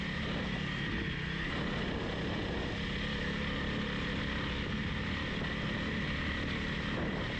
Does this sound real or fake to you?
real